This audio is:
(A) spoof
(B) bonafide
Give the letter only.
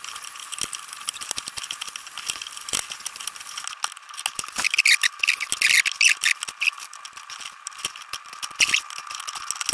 B